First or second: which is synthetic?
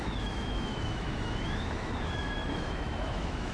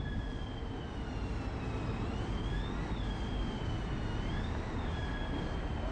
first